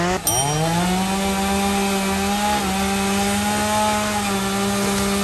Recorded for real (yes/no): yes